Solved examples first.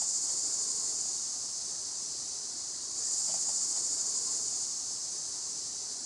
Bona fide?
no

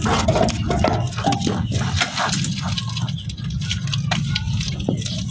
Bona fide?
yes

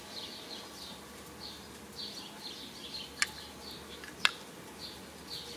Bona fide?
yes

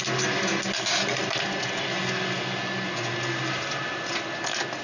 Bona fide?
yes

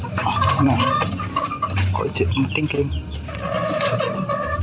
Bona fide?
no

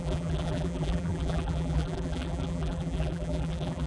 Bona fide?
no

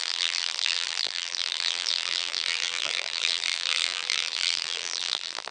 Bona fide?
no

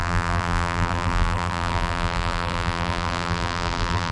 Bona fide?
no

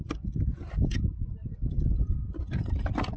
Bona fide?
no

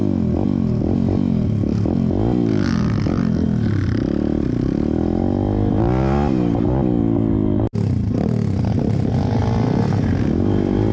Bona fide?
yes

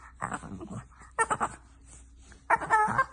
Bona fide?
yes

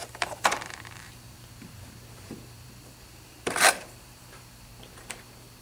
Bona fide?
no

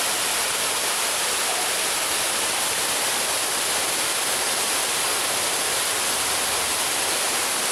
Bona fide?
yes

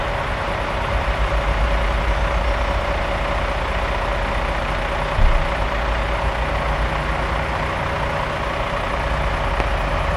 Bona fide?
yes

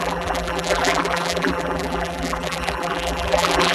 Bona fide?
no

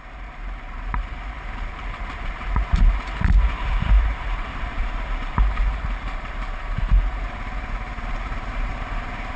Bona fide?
no